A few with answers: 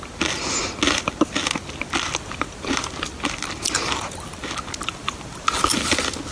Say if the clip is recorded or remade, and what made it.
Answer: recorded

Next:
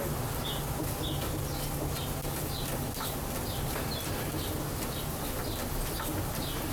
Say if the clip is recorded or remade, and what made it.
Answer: recorded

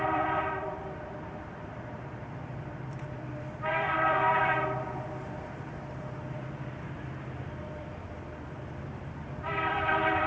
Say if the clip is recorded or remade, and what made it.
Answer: remade, vocoder, BigVGAN v2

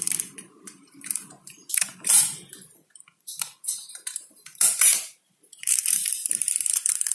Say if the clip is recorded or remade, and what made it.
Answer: remade, vocoder, BigVGAN v2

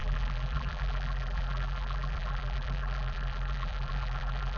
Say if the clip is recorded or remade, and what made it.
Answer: remade, vocoder, BigVGAN v2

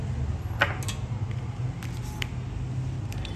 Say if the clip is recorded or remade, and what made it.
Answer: recorded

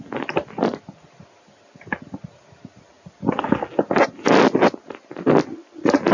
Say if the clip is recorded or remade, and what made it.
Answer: recorded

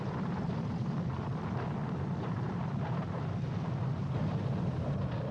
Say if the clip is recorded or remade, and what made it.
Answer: remade, vocoder, BigVGAN v2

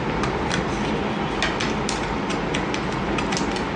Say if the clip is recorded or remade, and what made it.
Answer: recorded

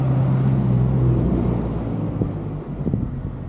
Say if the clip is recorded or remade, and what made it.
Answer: recorded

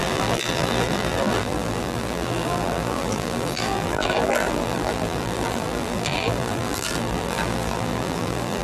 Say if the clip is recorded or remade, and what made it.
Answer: remade, vocoder, BigVGAN v2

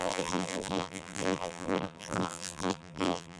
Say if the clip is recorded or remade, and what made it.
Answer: remade, vocoder, BigVGAN v2